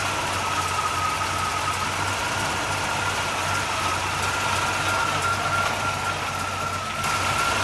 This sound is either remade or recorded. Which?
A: recorded